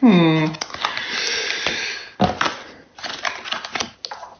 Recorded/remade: recorded